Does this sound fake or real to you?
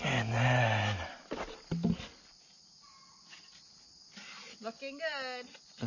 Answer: real